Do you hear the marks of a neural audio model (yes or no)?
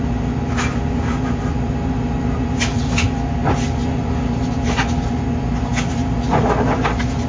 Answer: no